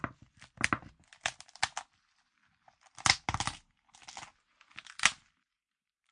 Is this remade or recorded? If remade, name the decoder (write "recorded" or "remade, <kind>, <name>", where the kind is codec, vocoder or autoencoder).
recorded